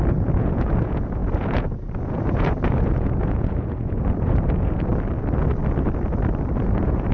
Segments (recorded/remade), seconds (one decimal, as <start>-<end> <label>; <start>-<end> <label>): 0.0-4.9 remade; 4.9-6.5 recorded; 6.5-7.1 remade